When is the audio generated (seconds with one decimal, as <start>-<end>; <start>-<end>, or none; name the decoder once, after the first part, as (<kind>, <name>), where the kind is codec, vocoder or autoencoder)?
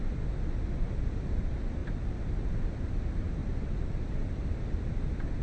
1.8-2.6 (vocoder, BigVGAN v2); 3.4-4.1